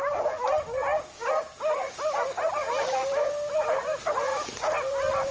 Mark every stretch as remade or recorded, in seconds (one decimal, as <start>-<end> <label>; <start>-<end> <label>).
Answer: 0.0-0.9 recorded; 0.9-3.8 remade; 3.8-4.3 recorded; 4.3-5.3 remade